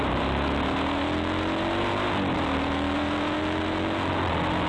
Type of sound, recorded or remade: recorded